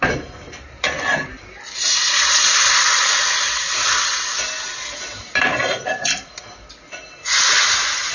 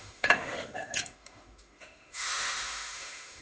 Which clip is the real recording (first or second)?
first